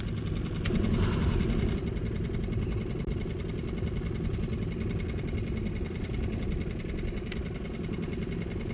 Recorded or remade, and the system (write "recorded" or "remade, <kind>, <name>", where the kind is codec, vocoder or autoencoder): recorded